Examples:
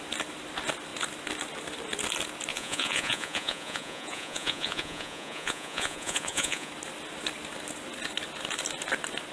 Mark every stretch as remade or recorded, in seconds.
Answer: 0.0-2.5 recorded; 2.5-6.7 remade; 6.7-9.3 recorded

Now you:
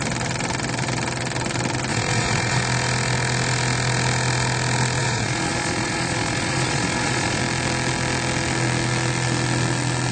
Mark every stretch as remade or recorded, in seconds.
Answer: 0.0-1.9 recorded; 1.9-2.6 remade; 2.6-5.0 recorded; 5.0-7.4 remade; 7.4-10.1 recorded

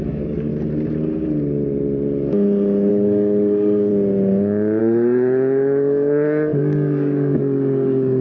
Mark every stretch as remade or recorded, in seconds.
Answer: 0.0-0.5 remade; 0.5-2.9 recorded; 2.9-3.9 remade; 3.9-4.8 recorded; 4.8-8.2 remade

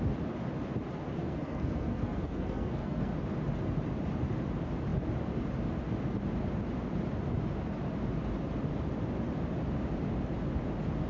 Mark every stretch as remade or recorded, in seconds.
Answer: 0.0-1.2 recorded; 1.2-3.1 remade; 3.1-11.1 recorded

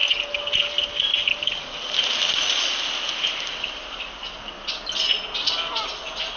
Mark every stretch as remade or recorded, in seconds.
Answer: 0.0-6.4 recorded

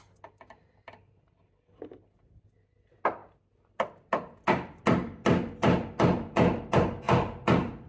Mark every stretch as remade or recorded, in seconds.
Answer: 0.0-7.9 recorded